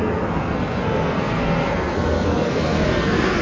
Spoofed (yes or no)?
yes